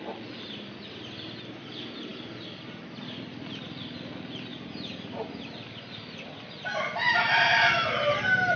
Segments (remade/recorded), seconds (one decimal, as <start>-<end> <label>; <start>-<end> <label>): 0.0-8.6 recorded